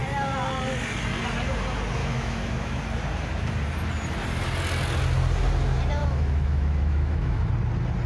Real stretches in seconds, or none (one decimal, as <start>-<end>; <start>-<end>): 0.0-2.0; 2.8-6.0; 7.5-8.1